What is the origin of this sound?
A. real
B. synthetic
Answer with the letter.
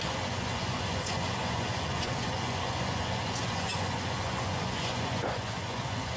B